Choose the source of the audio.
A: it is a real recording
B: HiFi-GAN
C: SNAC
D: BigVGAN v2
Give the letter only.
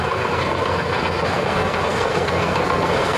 C